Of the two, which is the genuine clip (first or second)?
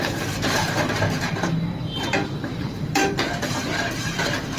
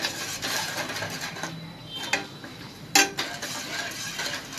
second